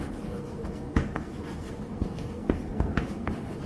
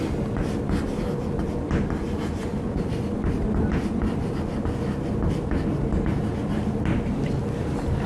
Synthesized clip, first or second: first